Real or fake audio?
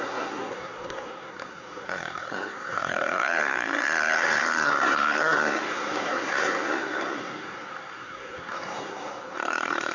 fake